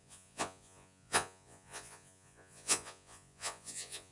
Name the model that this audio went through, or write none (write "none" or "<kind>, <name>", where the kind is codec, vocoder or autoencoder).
vocoder, Vocos